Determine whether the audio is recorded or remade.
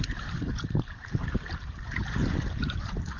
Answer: remade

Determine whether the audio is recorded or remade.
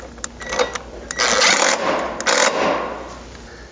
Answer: recorded